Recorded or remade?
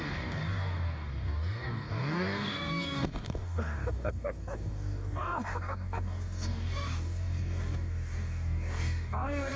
remade